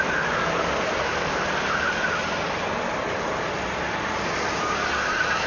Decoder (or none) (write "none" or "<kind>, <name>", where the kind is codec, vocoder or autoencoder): none